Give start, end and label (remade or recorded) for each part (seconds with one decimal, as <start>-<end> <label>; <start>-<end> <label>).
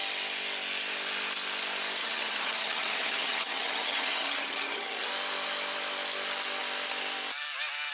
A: 0.0-2.0 recorded; 2.0-5.1 remade; 5.1-7.9 recorded